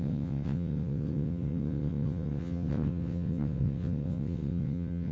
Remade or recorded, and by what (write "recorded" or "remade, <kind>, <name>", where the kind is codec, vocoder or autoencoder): remade, vocoder, WaveNeXt